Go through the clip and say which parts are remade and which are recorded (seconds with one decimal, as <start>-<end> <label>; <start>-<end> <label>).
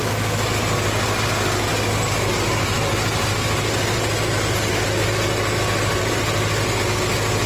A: 0.0-7.5 recorded